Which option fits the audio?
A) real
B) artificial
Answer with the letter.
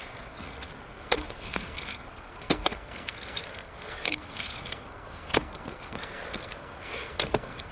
B